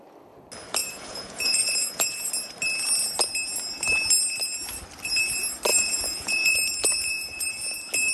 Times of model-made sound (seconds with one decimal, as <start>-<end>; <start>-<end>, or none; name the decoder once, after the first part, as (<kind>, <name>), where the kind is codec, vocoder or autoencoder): 0.8-2.3 (vocoder, Vocos); 5.7-7.4